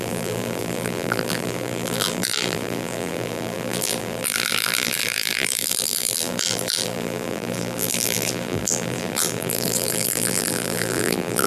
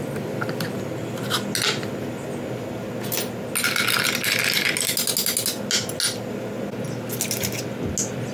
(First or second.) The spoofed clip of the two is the first